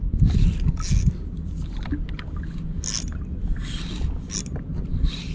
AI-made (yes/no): no